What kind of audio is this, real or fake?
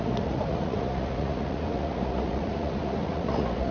fake